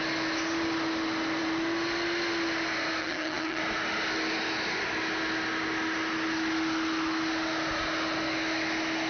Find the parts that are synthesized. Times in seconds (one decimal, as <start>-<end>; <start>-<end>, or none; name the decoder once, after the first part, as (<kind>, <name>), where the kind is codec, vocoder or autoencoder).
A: 3.0-3.6 (vocoder, HiFi-GAN)